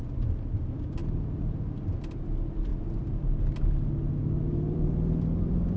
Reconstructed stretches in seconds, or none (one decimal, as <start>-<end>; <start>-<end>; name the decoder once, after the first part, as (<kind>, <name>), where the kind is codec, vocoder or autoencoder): 0.0-1.0 (vocoder, BigVGAN v2); 2.0-2.7; 4.2-5.8